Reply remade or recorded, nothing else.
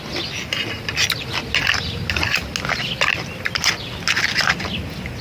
recorded